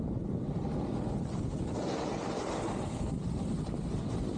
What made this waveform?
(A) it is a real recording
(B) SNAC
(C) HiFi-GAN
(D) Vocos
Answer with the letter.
A